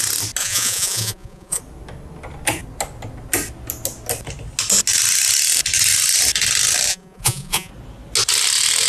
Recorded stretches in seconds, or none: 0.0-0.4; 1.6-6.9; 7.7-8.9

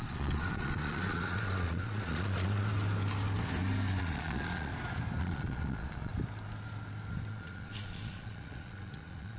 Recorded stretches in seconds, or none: 2.7-4.0; 4.7-5.2; 6.1-7.3

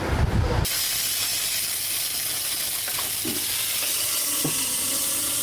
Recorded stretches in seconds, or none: 0.0-5.4

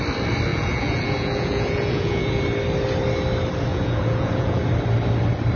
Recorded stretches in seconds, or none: 0.0-0.5; 2.4-3.7; 4.6-5.6

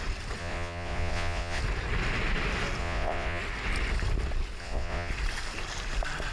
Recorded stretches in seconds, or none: 0.0-0.4; 1.6-2.8; 3.4-4.6; 5.1-6.3